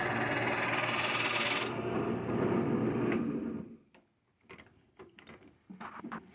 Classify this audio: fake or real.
real